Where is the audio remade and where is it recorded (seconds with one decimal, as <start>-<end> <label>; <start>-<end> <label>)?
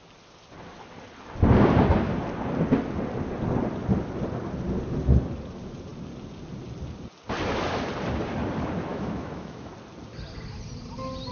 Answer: 0.0-8.9 recorded; 8.9-9.7 remade; 9.7-11.3 recorded